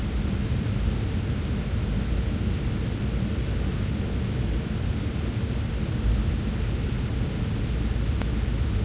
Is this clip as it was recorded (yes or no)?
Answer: yes